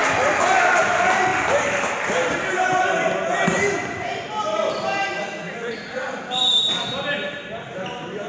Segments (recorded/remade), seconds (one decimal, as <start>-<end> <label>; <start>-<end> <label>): 0.0-0.8 remade; 0.8-5.4 recorded; 5.4-7.0 remade; 7.0-8.3 recorded